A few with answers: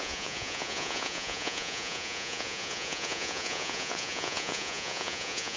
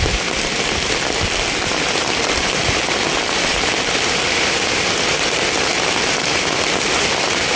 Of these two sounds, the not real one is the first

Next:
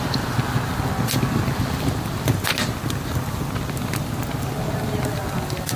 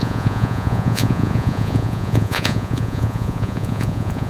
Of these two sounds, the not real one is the second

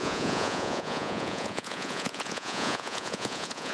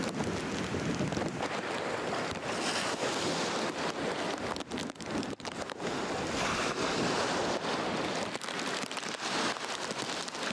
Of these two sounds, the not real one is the first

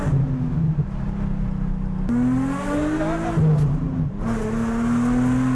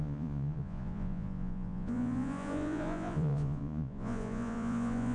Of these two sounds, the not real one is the second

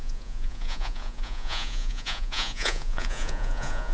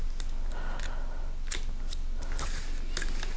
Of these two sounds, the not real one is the first